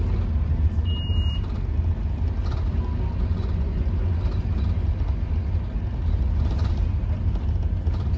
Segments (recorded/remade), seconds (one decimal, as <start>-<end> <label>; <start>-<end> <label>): 0.0-3.3 recorded; 3.3-3.9 remade; 3.9-8.2 recorded